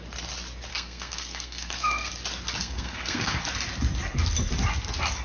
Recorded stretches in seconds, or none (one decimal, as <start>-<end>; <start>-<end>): 0.0-0.7; 2.1-2.6; 3.4-5.2